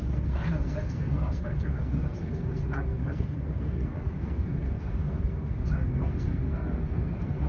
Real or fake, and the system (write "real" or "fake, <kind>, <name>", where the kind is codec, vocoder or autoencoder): fake, codec, SNAC